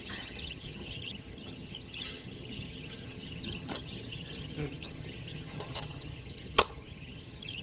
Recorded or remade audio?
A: remade